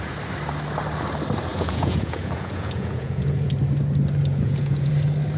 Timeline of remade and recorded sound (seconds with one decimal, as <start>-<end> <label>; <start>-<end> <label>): 0.0-1.5 recorded; 1.5-3.5 remade; 3.5-4.3 recorded; 4.3-4.9 remade; 4.9-5.4 recorded